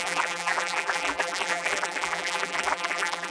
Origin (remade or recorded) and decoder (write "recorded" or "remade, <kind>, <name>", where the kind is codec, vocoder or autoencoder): remade, vocoder, BigVGAN v2